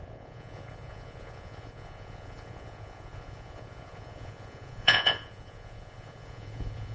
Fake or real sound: fake